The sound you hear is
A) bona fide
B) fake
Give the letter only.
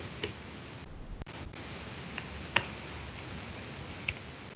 A